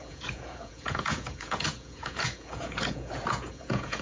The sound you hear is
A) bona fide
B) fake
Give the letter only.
B